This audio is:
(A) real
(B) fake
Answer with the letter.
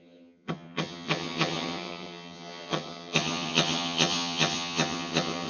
B